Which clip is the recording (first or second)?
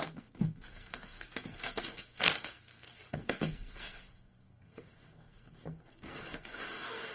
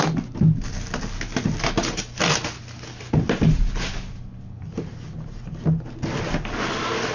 second